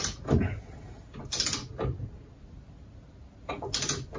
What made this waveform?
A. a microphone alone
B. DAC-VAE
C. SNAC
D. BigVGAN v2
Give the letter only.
A